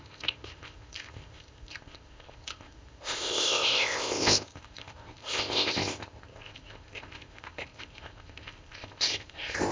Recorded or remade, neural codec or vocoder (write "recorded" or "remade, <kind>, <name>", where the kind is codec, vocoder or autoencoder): remade, codec, ZipCodec